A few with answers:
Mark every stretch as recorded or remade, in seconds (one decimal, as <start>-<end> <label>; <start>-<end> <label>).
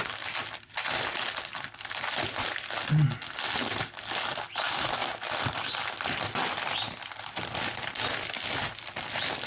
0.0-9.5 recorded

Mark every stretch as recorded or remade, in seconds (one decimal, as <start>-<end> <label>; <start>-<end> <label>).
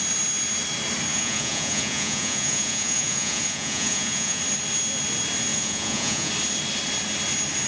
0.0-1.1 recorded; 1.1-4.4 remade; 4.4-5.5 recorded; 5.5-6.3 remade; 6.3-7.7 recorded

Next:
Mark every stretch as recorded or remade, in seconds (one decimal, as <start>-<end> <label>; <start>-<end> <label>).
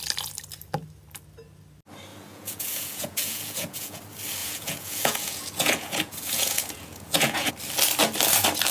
0.0-2.1 recorded; 2.1-4.0 remade; 4.0-4.4 recorded; 4.4-7.5 remade; 7.5-8.7 recorded